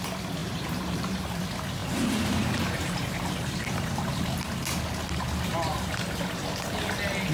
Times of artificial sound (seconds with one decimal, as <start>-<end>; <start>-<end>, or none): 0.4-1.4; 1.8-4.1; 5.5-6.8